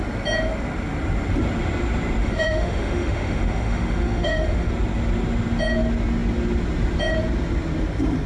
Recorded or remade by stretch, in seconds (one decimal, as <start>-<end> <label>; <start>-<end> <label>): 0.0-2.2 recorded; 2.2-4.7 remade; 4.7-8.3 recorded